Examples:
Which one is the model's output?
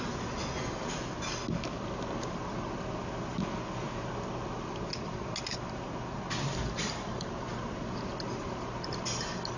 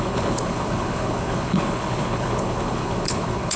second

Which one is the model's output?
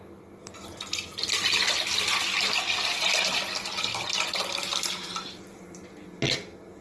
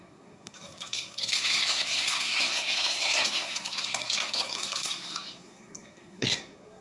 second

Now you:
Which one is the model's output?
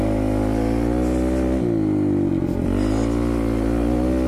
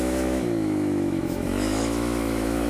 second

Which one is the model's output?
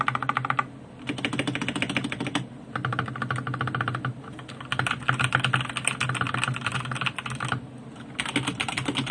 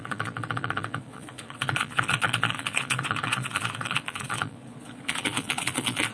second